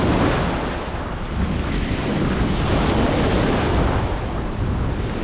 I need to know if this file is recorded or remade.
recorded